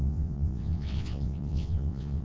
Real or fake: fake